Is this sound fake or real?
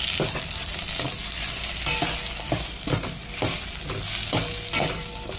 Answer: real